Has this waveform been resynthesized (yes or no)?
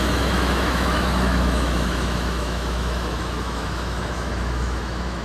yes